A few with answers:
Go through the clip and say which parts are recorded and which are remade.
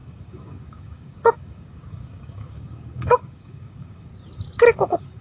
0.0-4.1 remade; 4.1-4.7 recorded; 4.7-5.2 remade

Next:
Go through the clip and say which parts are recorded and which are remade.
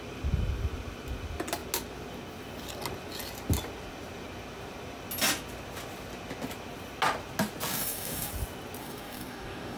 0.0-7.7 recorded; 7.7-8.3 remade; 8.3-8.8 recorded; 8.8-9.8 remade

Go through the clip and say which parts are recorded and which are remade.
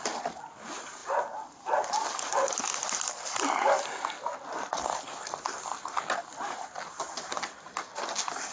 0.0-8.5 recorded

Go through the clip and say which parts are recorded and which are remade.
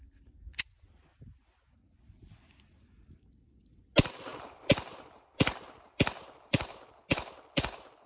0.0-8.1 recorded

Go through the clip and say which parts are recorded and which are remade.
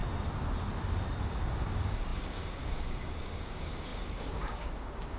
0.0-1.2 recorded; 1.2-5.2 remade